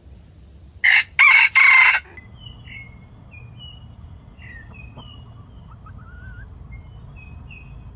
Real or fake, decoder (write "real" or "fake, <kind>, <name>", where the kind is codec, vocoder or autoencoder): real